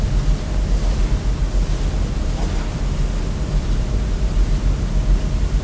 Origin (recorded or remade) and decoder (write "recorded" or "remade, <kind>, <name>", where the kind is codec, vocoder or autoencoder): remade, vocoder, BigVGAN v2